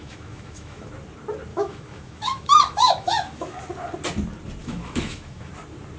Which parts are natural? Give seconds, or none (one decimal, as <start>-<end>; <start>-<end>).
0.9-1.5; 3.6-4.6; 5.5-6.0